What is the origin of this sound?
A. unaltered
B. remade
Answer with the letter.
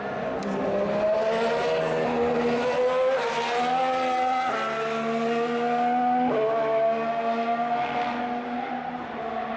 A